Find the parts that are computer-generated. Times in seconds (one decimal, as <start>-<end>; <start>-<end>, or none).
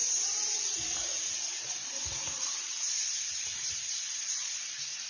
0.0-1.3; 1.8-4.6